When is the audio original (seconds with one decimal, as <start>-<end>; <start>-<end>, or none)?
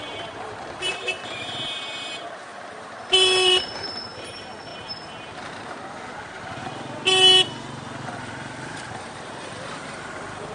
2.5-3.8; 4.7-8.6